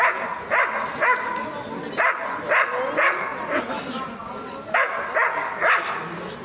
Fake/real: real